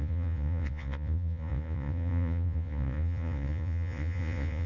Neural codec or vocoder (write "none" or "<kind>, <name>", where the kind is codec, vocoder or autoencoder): vocoder, Vocos